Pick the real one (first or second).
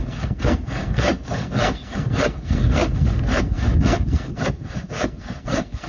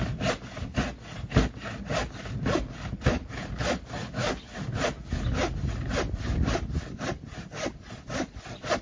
second